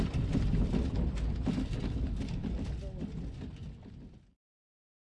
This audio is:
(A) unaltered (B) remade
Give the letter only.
A